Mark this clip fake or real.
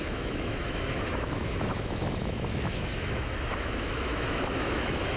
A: fake